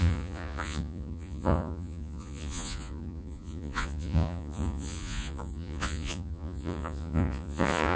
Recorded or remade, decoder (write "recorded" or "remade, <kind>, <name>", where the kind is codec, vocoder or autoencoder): remade, vocoder, Vocos